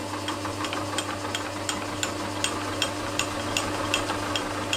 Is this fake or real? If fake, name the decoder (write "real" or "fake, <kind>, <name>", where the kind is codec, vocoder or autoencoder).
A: real